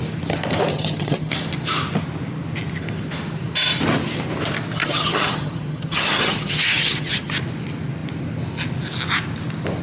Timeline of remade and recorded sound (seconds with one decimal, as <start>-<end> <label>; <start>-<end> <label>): 0.0-0.7 recorded; 0.7-1.3 remade; 1.3-4.8 recorded; 4.8-7.3 remade; 7.3-9.8 recorded